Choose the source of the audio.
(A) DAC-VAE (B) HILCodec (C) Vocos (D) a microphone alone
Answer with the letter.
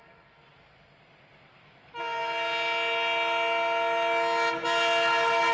D